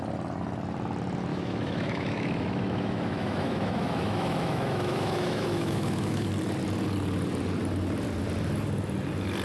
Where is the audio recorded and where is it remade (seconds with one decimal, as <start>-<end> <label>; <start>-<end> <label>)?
0.0-1.3 recorded; 1.3-6.3 remade; 6.3-9.4 recorded